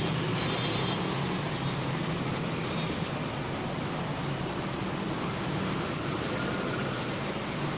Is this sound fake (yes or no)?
no